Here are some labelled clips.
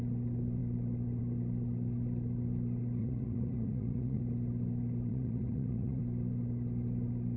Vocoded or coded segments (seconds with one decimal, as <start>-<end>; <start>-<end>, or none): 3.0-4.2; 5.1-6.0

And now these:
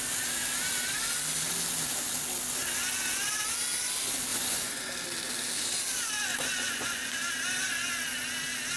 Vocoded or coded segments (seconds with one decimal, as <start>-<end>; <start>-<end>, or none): 4.3-4.9; 6.3-7.2

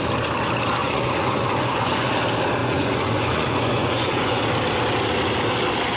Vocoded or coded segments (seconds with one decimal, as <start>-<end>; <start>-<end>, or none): 0.8-2.1; 2.6-4.4

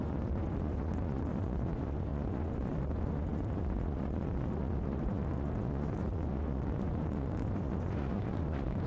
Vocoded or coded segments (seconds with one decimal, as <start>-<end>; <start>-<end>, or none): 0.0-8.9